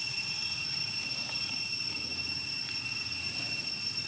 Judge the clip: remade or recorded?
recorded